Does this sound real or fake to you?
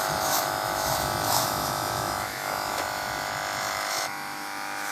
fake